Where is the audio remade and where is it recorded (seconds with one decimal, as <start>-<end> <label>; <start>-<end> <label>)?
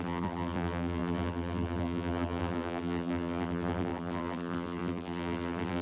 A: 0.0-5.8 remade